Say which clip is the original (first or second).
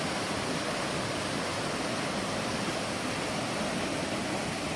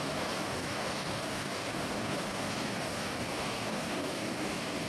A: first